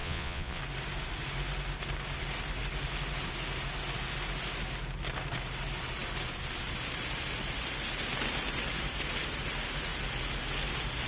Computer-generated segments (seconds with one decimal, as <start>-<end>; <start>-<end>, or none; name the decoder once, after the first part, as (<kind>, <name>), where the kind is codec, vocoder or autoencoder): 0.0-0.6 (vocoder, Vocos)